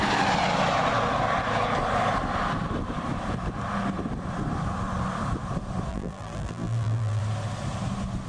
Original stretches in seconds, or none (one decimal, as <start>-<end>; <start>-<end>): 0.0-5.9; 7.2-8.3